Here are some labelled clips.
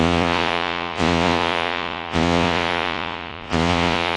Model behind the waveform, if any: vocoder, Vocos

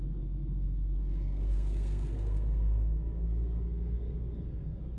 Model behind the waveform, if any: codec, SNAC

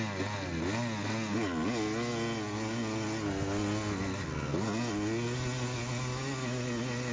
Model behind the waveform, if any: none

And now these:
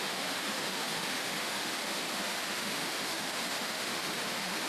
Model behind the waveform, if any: autoencoder, DAC-VAE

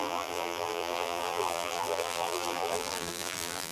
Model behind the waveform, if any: vocoder, BigVGAN v2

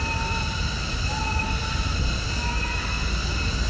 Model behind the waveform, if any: none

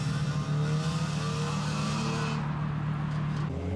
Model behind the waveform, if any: none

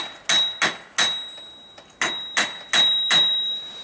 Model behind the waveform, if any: none